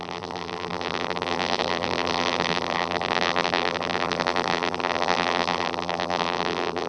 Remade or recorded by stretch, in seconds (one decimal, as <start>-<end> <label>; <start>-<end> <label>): 0.0-6.9 remade